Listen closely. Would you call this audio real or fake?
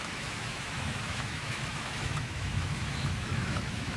fake